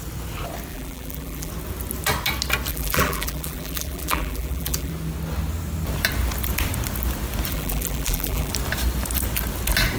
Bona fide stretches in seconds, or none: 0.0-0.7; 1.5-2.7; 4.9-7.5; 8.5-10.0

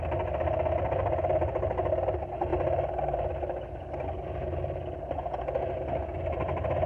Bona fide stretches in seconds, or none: 0.0-6.9

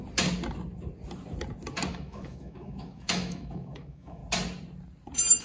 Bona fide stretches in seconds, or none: 0.0-1.9; 4.2-5.4

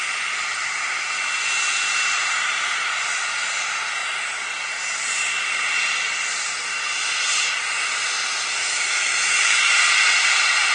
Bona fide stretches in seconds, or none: 0.0-8.6; 9.7-10.7

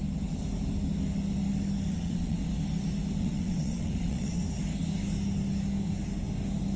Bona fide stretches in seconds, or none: 0.0-1.9; 2.4-3.2; 4.4-6.8

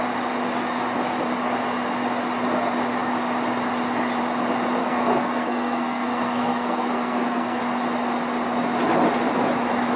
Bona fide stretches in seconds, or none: 0.0-4.8; 7.6-10.0